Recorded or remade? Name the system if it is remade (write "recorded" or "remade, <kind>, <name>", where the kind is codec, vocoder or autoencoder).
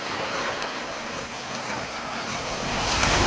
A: remade, codec, SNAC